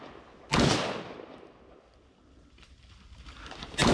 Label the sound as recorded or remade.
recorded